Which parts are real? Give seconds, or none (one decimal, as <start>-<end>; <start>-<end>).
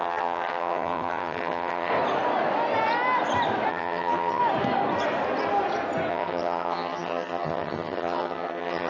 1.9-3.7; 4.4-6.1